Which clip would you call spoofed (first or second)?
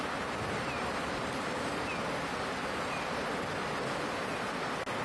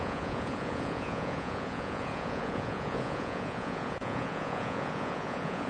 second